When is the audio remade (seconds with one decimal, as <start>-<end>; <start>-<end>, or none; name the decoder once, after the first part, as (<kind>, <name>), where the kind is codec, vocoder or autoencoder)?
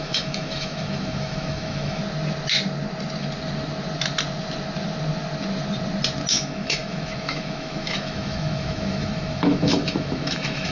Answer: 0.0-2.0 (autoencoder, DAC-VAE); 6.3-10.7